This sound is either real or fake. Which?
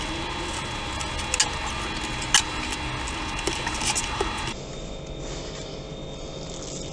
real